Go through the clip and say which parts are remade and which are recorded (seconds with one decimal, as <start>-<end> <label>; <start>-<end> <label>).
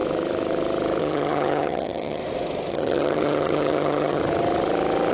0.0-1.0 recorded; 1.0-2.2 remade; 2.2-2.7 recorded; 2.7-4.2 remade; 4.2-5.1 recorded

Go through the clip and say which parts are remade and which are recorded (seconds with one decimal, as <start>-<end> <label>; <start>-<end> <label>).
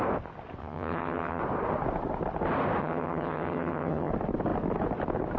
0.0-0.6 recorded; 0.6-1.4 remade; 1.4-2.8 recorded; 2.8-4.1 remade; 4.1-5.4 recorded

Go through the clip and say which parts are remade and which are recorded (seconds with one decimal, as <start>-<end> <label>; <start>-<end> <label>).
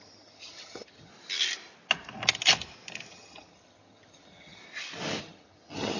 0.0-1.1 remade; 1.1-3.1 recorded; 3.1-4.6 remade; 4.6-5.2 recorded; 5.2-6.0 remade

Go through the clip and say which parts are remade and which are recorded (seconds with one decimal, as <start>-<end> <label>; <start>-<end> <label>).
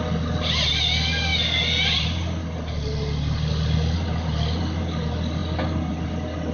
0.0-6.5 recorded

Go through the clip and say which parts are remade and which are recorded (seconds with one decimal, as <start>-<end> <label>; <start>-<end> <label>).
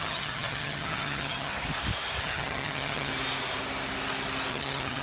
0.0-1.5 remade; 1.5-2.2 recorded; 2.2-3.1 remade; 3.1-4.5 recorded; 4.5-5.0 remade